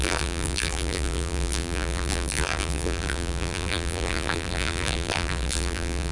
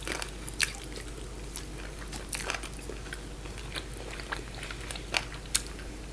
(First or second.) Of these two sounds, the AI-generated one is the first